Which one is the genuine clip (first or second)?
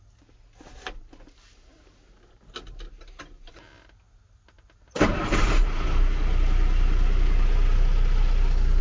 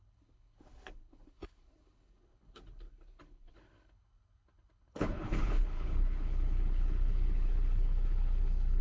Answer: first